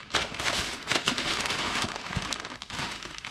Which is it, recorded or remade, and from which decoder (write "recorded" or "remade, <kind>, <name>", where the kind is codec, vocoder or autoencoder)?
remade, autoencoder, DAC-VAE